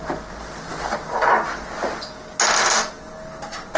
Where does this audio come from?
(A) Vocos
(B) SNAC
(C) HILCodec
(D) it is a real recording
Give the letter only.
D